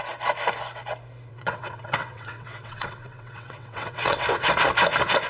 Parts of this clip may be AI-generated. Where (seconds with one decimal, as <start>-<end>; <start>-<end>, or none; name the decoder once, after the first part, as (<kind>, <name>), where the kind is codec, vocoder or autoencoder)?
1.3-4.5 (vocoder, WaveNeXt)